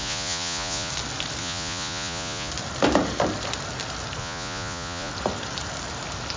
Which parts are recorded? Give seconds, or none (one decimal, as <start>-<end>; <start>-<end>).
0.9-1.4; 2.5-4.2; 5.1-6.4

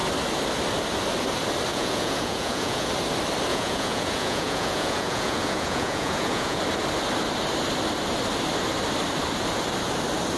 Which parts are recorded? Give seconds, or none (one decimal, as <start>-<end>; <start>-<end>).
0.0-1.7; 2.9-3.5; 6.6-10.4

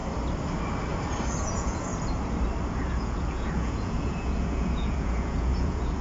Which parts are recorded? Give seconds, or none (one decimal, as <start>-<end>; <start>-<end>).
0.0-1.4; 1.9-2.7

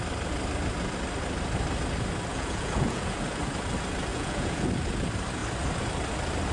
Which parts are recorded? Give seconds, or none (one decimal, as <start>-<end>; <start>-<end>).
0.0-2.3; 3.2-4.1; 4.7-6.5

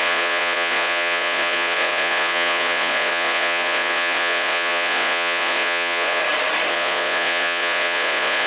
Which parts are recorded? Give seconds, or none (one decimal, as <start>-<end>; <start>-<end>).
6.2-6.7

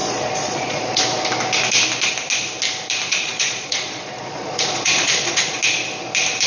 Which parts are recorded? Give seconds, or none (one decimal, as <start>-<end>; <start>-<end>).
1.0-3.1; 5.6-6.5

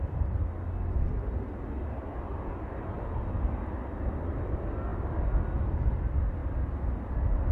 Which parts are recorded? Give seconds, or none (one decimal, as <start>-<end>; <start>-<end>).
0.0-7.5

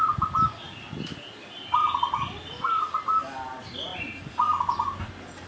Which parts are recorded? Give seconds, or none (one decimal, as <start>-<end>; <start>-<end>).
0.0-5.5